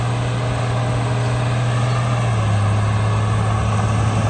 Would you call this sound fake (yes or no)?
no